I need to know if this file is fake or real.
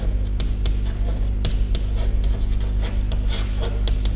real